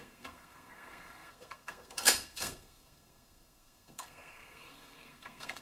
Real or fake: fake